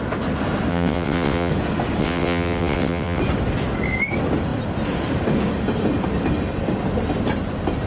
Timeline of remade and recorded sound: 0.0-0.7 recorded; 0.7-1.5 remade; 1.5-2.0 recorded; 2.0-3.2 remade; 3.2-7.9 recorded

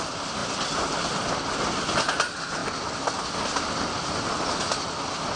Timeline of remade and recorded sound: 0.0-5.4 recorded